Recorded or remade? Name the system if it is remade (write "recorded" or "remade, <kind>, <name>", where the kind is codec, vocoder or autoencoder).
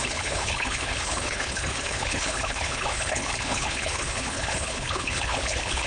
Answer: remade, codec, HILCodec